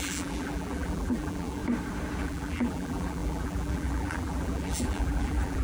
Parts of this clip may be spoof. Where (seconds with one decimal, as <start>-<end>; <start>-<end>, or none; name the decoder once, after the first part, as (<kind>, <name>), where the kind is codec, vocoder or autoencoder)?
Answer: 0.0-1.6 (vocoder, BigVGAN v2); 2.2-5.6

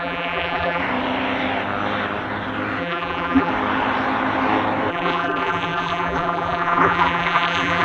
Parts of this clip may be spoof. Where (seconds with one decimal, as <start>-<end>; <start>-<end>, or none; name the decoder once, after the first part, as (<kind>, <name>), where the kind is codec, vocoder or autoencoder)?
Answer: 0.0-0.8 (vocoder, BigVGAN v2); 2.8-3.5; 4.9-7.8